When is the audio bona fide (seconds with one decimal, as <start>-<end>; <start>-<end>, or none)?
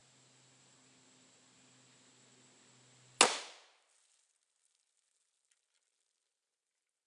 0.0-7.1